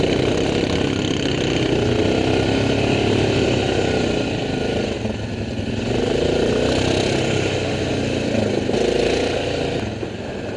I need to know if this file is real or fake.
real